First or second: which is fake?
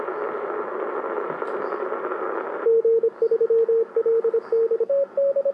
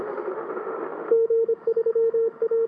second